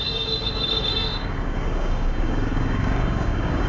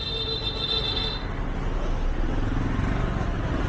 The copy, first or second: first